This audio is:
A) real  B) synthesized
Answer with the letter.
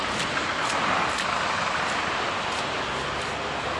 A